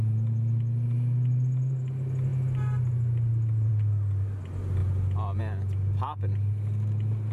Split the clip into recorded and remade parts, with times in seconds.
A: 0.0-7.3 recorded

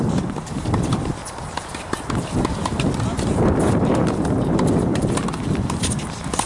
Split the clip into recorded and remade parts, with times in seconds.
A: 0.0-6.5 remade

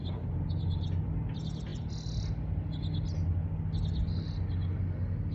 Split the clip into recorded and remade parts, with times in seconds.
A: 0.0-5.3 recorded

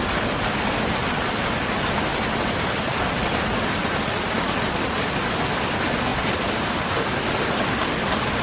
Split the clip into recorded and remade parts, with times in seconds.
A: 0.0-2.1 recorded; 2.1-3.9 remade; 3.9-6.1 recorded; 6.1-8.4 remade

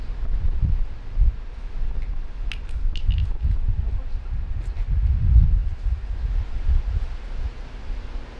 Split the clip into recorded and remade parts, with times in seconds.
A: 0.0-5.6 recorded; 5.6-6.8 remade; 6.8-8.4 recorded